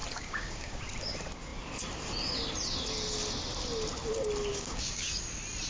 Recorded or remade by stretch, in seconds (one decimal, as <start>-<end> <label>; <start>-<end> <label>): 0.0-0.8 remade; 0.8-4.5 recorded; 4.5-5.1 remade; 5.1-5.7 recorded